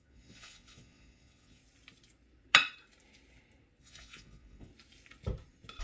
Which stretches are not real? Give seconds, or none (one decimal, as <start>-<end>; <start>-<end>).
0.0-1.6; 3.8-4.7